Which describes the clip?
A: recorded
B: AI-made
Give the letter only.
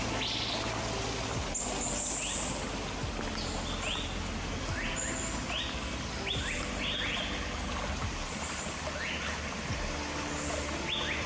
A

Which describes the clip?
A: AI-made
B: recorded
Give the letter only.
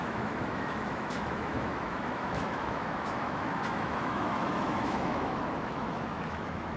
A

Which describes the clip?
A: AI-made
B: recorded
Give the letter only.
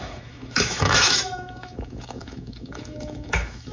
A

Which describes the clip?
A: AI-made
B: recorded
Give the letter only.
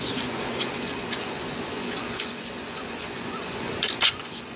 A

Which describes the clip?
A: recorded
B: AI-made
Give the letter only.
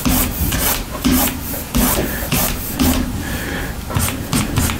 A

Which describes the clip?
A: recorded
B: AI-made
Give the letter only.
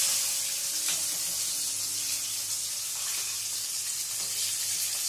A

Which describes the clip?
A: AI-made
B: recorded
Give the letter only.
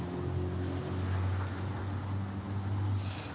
B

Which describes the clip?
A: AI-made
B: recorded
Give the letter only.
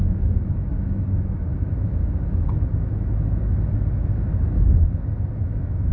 A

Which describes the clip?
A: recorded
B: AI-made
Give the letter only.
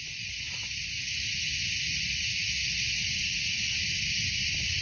A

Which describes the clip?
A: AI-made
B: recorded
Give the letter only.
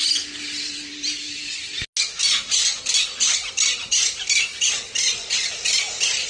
B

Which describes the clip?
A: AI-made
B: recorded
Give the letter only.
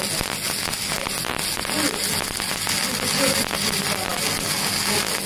B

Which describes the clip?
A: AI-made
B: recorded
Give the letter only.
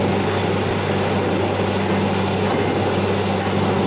B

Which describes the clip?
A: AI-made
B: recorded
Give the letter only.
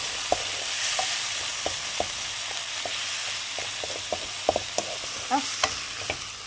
B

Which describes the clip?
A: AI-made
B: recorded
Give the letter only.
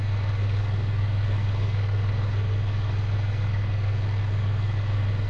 A